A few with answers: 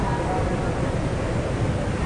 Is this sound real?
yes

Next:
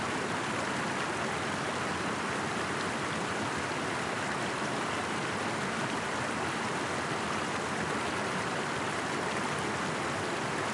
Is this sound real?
yes